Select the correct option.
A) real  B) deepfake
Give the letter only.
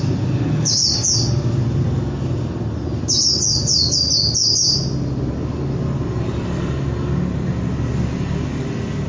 A